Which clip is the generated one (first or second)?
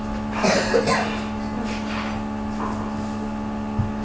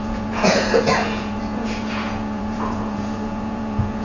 second